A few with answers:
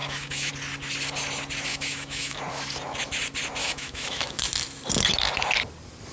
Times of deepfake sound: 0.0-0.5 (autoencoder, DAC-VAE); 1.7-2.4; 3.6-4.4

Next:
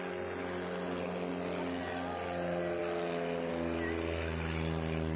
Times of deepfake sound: none

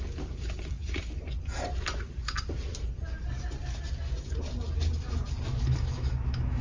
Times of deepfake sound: 5.5-6.6 (autoencoder, DAC-VAE)

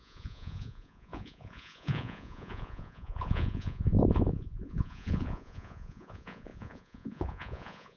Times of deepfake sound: 0.0-8.0 (vocoder, Vocos)